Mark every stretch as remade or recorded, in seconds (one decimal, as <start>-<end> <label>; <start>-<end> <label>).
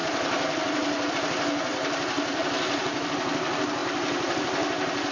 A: 0.0-1.1 remade; 1.1-1.7 recorded; 1.7-3.1 remade; 3.1-5.1 recorded